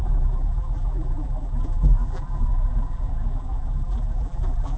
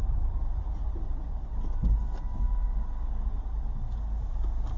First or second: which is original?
second